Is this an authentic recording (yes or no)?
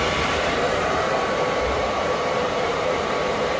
no